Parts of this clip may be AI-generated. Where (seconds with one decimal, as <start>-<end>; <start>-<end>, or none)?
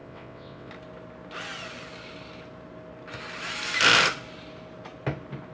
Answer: 0.0-0.7